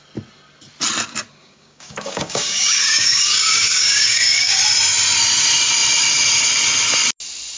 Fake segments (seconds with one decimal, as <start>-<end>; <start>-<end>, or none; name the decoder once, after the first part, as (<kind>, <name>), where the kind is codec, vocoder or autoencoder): 1.4-4.6 (codec, DAC)

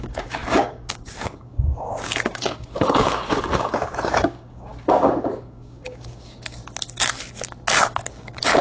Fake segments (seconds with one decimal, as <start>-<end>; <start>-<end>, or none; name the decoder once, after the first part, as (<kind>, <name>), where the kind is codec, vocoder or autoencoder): 0.0-6.6 (codec, DAC); 8.1-8.6

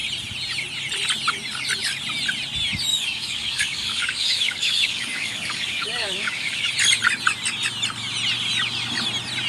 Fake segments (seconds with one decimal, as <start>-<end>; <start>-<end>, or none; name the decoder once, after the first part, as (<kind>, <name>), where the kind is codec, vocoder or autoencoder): 2.9-6.7 (codec, DAC)